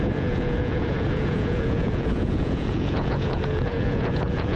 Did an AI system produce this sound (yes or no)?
yes